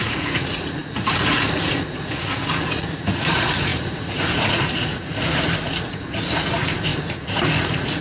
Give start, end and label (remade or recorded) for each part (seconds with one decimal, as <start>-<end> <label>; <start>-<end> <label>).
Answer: 0.0-8.0 remade